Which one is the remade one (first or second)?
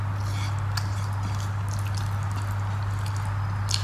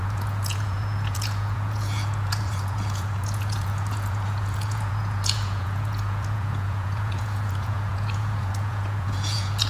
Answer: second